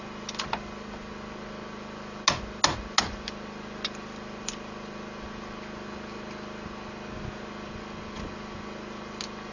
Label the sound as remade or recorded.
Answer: recorded